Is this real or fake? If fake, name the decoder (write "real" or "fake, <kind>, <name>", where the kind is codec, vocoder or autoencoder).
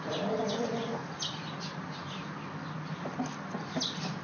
real